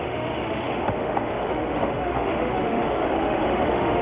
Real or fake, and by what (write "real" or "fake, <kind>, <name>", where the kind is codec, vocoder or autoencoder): fake, autoencoder, DAC-VAE